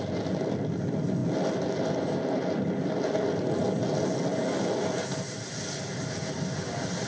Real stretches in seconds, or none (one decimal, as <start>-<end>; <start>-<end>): 0.0-7.1